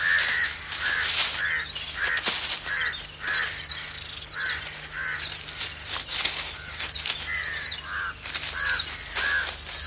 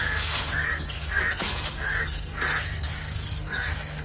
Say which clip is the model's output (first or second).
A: second